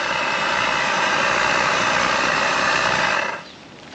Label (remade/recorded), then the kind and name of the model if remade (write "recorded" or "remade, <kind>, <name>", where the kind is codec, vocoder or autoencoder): remade, vocoder, BigVGAN v2